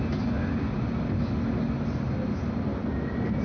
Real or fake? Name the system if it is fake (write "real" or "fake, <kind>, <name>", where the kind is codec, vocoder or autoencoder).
real